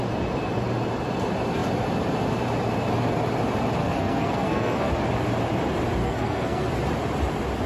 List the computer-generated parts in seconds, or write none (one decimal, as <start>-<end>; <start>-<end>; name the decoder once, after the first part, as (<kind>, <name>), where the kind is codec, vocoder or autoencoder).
3.8-4.9 (codec, SNAC); 6.0-6.7